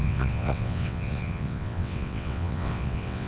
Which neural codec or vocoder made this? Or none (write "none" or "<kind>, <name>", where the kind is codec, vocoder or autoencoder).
vocoder, WaveNeXt